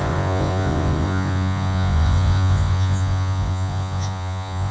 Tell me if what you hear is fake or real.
fake